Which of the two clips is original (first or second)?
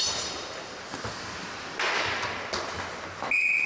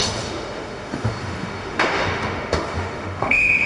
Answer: first